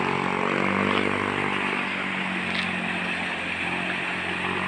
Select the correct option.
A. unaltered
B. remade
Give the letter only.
A